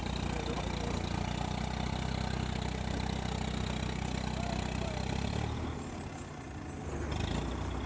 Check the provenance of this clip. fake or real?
real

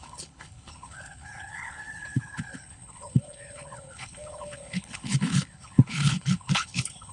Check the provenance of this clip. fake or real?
fake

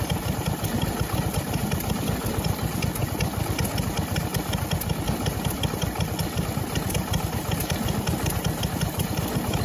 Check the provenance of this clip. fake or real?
real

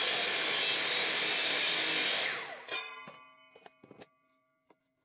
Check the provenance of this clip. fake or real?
real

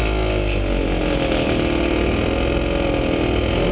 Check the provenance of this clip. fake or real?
real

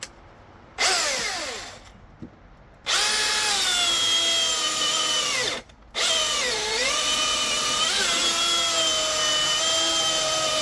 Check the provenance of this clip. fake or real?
real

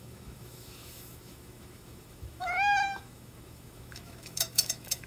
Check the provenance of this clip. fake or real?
fake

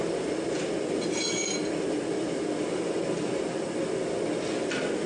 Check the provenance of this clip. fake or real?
real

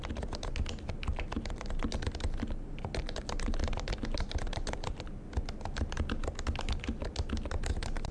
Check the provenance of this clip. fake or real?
real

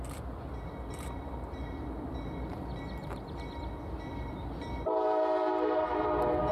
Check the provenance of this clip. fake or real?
real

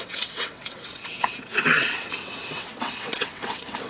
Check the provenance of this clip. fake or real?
fake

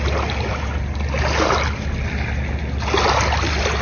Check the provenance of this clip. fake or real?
real